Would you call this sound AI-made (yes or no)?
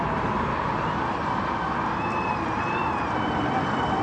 no